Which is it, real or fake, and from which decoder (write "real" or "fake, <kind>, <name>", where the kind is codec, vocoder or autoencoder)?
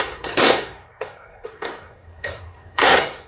fake, codec, SNAC